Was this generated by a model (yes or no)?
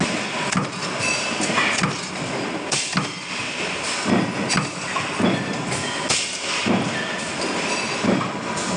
no